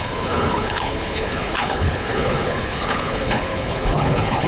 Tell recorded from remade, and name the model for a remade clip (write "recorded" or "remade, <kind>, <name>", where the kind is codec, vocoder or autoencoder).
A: remade, codec, HILCodec